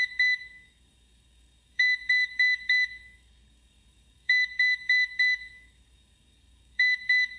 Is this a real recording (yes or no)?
no